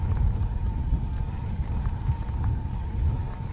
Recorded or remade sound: recorded